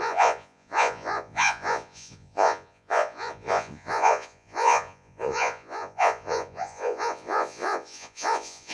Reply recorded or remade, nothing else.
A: remade